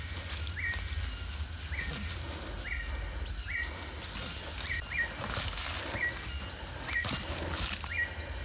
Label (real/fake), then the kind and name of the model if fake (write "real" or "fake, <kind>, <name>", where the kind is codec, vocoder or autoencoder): real